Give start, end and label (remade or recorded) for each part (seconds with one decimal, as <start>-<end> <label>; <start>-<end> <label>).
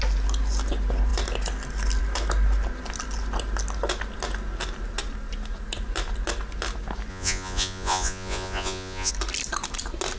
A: 0.0-7.1 recorded; 7.1-9.1 remade; 9.1-10.2 recorded